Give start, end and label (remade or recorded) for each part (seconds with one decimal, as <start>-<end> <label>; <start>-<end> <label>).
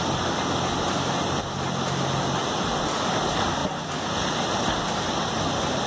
0.0-5.9 recorded